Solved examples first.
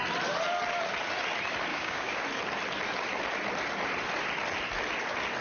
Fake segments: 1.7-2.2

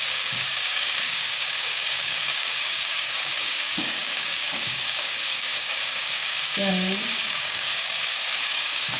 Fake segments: 0.0-9.0

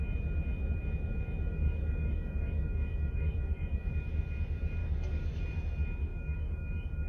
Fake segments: 1.5-4.1; 4.8-5.4; 6.1-7.1

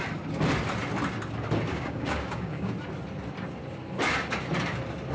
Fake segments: 1.7-2.7

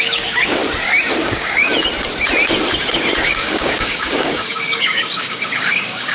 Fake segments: 0.0-0.6; 1.2-1.7; 3.3-6.1